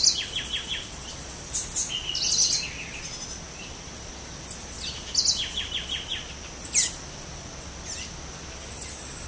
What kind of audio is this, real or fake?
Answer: real